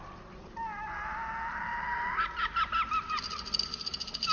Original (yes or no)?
yes